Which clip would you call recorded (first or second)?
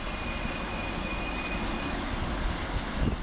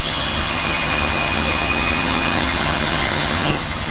first